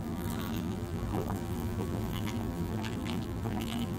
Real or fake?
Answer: fake